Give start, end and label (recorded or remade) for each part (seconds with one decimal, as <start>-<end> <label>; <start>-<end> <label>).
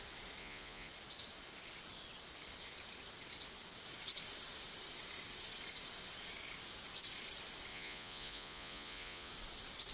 0.0-0.4 recorded; 0.4-0.9 remade; 0.9-7.7 recorded; 7.7-9.3 remade; 9.3-9.9 recorded